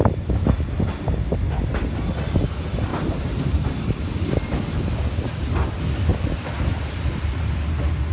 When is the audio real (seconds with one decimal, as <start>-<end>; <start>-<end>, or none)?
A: 0.0-2.9; 4.4-8.1